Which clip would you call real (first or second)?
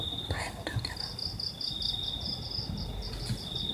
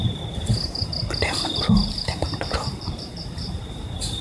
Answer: first